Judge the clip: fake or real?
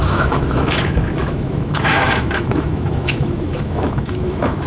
fake